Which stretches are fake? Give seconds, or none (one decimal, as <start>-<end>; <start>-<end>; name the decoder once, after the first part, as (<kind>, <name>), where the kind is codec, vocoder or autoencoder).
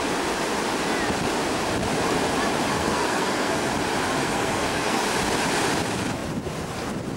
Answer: 2.7-3.7 (codec, SNAC); 4.2-5.0